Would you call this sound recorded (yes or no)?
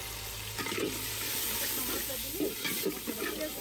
yes